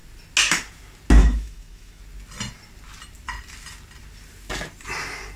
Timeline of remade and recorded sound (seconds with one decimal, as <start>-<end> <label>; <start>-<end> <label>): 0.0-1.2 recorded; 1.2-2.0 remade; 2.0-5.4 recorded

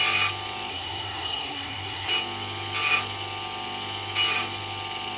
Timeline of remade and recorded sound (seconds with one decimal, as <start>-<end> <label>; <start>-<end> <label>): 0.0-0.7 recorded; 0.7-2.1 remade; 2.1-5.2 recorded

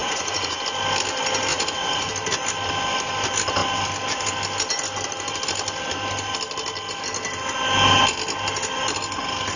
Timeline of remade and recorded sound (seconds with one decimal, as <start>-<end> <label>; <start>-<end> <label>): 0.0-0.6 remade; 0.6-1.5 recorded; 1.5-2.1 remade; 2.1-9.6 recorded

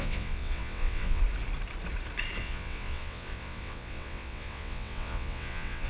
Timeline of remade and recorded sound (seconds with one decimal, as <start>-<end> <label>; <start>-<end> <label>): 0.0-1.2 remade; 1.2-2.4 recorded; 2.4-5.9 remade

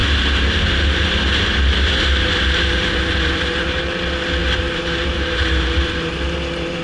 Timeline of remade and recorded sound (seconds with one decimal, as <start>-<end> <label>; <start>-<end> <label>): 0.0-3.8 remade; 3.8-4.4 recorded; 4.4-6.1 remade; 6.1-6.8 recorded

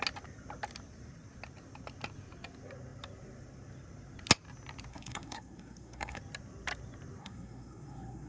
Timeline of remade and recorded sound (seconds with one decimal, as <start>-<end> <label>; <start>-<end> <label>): 0.0-4.9 recorded; 4.9-6.2 remade; 6.2-7.2 recorded; 7.2-8.3 remade